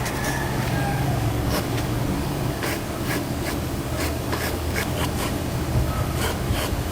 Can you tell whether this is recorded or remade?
remade